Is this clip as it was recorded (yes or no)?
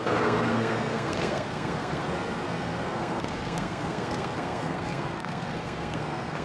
no